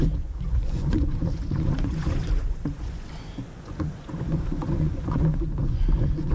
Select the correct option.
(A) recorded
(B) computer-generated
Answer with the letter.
B